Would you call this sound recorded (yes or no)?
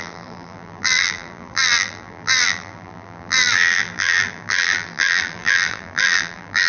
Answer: no